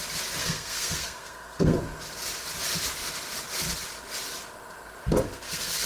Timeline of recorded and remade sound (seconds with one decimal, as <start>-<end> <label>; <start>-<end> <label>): 0.0-0.4 recorded; 0.4-1.8 remade; 1.8-5.0 recorded; 5.0-5.9 remade